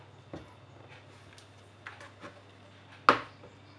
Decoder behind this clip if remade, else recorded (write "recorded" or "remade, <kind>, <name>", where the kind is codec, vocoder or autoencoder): recorded